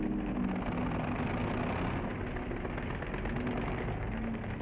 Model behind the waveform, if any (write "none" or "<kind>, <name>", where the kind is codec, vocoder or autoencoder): none